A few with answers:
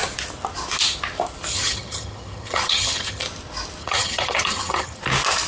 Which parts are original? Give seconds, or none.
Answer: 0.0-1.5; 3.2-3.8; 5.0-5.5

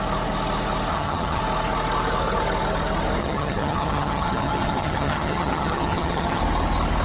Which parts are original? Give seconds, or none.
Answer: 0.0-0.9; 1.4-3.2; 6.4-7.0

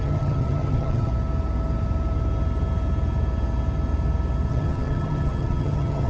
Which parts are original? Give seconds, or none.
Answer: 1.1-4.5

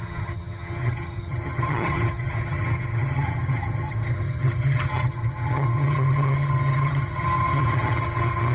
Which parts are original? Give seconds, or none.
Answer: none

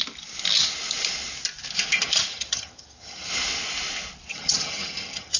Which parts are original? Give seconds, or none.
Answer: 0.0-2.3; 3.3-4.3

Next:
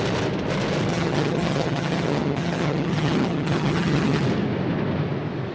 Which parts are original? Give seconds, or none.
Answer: 0.0-0.9; 4.2-5.5